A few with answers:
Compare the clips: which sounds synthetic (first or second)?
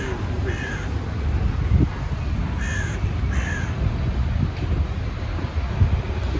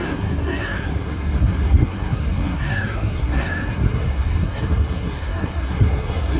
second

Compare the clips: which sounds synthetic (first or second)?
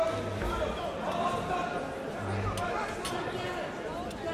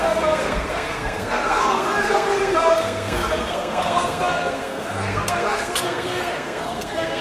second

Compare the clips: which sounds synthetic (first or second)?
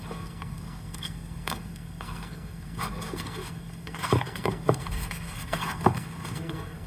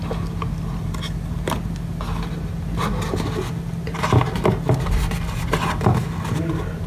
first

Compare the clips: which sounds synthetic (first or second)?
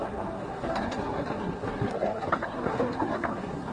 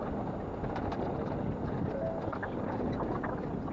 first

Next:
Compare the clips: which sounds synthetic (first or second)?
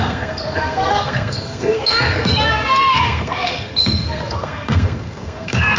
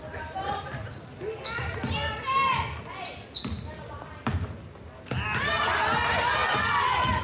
first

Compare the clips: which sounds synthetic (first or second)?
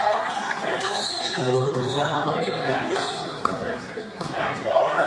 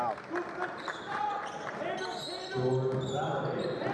first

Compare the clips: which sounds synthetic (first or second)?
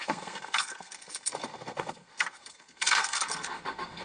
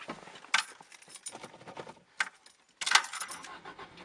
first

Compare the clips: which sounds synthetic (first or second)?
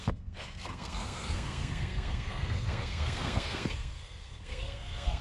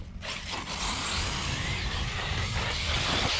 first